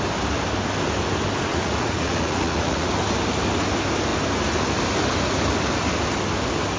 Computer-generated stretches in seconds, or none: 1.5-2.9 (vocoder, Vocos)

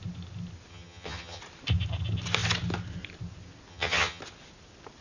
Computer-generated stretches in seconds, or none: 0.7-1.4 (vocoder, HiFi-GAN); 3.7-4.2

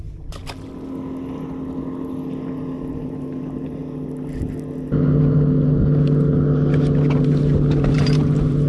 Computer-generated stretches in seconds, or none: 0.0-0.4 (vocoder, BigVGAN v2); 2.9-3.8; 7.5-8.7

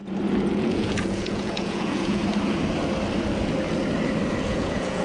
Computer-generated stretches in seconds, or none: 0.5-2.2 (vocoder, Vocos); 4.5-5.0

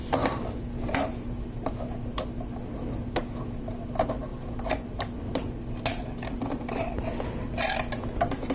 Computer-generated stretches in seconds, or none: none

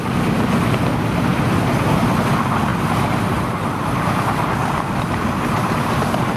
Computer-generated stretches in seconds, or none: none